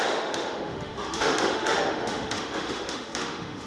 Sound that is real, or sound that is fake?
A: fake